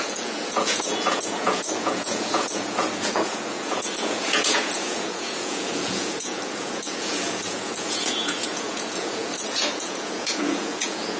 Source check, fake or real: fake